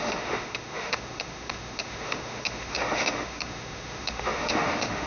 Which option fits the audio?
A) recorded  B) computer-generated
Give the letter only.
B